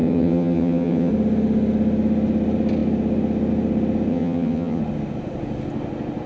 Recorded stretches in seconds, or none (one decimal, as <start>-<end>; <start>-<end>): 1.1-4.1; 4.8-6.3